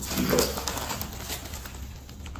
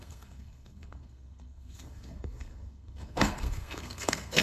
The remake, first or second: second